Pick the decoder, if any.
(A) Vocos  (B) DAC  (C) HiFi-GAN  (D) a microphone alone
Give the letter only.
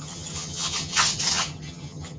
C